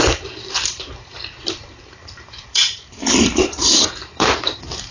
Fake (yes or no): yes